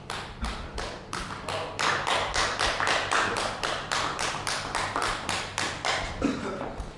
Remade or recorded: remade